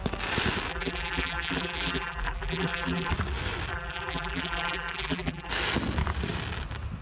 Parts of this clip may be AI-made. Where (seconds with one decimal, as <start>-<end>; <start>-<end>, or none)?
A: 0.7-3.1; 3.7-5.5